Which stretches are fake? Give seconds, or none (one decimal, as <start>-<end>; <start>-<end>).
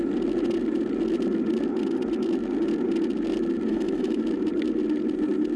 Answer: 3.7-4.2